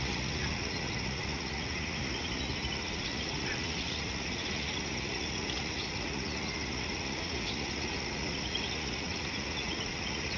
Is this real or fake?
fake